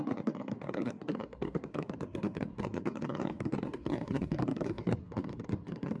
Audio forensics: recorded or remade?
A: remade